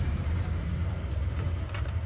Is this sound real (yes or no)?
no